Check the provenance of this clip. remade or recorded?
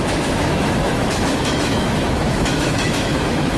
remade